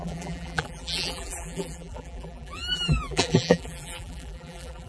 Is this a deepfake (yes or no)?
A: yes